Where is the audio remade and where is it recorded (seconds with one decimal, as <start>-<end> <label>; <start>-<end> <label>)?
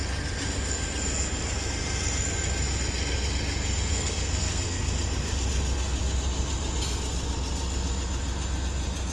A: 0.0-3.9 recorded; 3.9-4.9 remade; 4.9-9.1 recorded